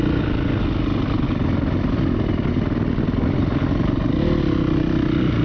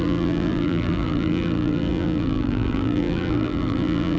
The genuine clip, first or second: first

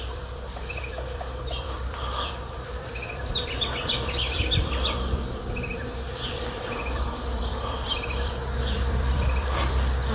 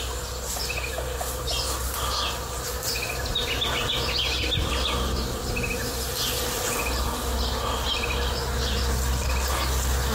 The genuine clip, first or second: second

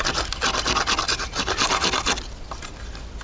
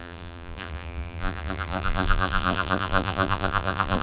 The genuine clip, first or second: first